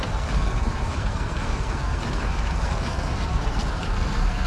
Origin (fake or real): fake